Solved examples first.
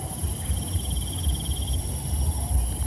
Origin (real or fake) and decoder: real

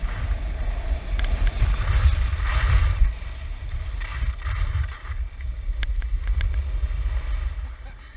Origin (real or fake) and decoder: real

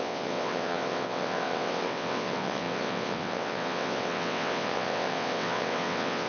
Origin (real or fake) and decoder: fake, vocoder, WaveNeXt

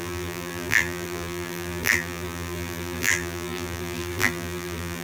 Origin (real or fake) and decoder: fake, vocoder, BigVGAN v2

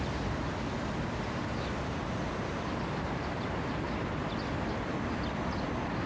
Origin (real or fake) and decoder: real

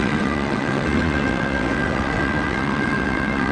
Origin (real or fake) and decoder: fake, vocoder, WaveNeXt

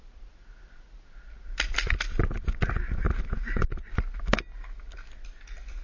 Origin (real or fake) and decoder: real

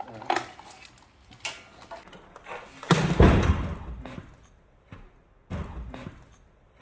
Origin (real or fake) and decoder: real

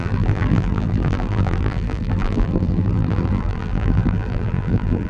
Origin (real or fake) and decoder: fake, vocoder, BigVGAN v2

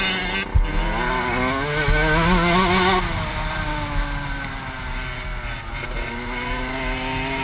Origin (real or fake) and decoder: real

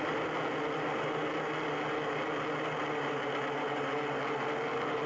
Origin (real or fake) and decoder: real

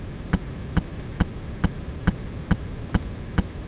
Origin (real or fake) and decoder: real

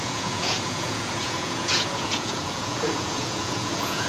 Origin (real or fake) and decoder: fake, vocoder, Vocos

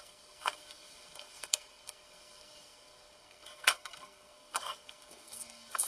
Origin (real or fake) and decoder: fake, codec, SNAC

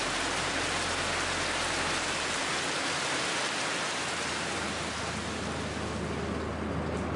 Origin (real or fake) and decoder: real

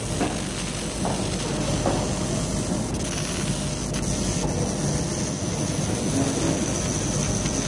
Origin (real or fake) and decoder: real